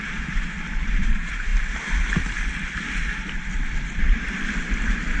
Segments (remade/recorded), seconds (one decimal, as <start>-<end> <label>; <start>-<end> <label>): 0.0-1.5 remade; 1.5-4.6 recorded; 4.6-5.2 remade